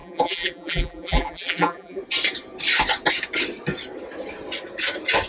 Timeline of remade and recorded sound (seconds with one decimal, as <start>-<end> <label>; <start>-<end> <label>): 0.0-2.0 remade; 2.0-5.3 recorded